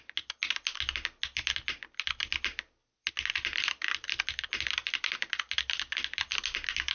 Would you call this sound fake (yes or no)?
no